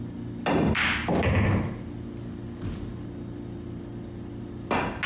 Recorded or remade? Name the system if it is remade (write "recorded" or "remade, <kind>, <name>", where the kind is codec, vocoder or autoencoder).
recorded